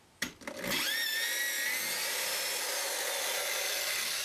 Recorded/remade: recorded